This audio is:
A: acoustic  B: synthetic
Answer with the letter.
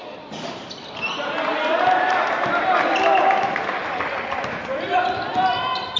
A